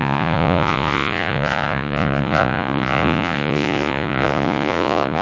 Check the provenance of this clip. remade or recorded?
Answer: remade